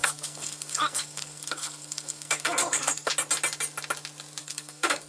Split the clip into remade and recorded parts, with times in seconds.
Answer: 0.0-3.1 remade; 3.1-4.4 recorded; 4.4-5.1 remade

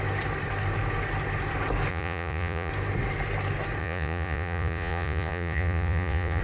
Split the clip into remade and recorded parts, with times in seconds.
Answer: 0.0-1.9 recorded; 1.9-2.7 remade; 2.7-3.8 recorded; 3.8-6.4 remade

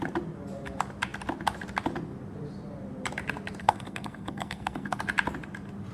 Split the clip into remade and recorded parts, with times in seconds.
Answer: 0.0-3.6 recorded; 3.6-5.0 remade; 5.0-5.9 recorded

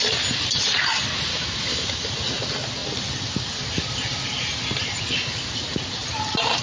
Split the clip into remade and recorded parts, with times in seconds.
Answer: 0.0-1.3 recorded; 1.3-2.1 remade; 2.1-6.6 recorded

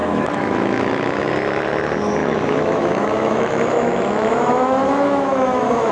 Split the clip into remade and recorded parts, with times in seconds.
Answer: 0.0-1.3 remade; 1.3-2.2 recorded; 2.2-5.9 remade